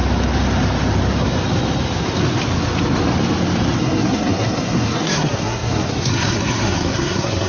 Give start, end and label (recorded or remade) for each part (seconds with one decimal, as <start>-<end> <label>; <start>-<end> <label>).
0.0-3.8 recorded; 3.8-7.5 remade